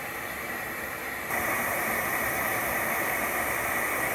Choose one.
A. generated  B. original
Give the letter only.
A